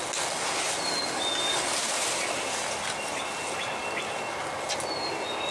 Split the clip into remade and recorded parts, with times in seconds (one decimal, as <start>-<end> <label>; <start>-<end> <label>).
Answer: 0.0-5.5 recorded

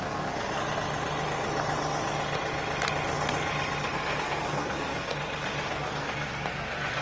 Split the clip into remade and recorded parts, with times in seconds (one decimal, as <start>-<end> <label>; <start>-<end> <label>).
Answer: 0.0-0.6 remade; 0.6-3.9 recorded; 3.9-5.1 remade; 5.1-5.7 recorded; 5.7-7.0 remade

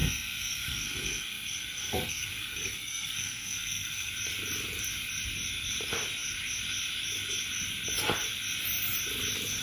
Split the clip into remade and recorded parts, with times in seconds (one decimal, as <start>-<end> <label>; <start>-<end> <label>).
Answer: 0.0-4.1 remade; 4.1-9.6 recorded